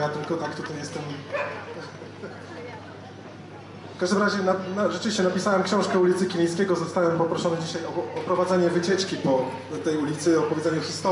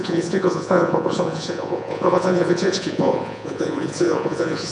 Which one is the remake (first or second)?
second